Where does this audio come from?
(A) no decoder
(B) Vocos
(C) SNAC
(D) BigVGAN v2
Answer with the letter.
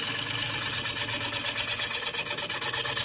A